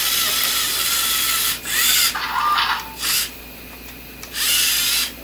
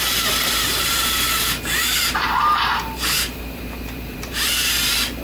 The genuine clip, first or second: first